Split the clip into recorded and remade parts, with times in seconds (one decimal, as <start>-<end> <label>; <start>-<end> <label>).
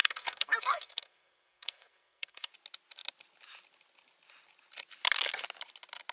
0.0-2.5 remade; 2.5-6.1 recorded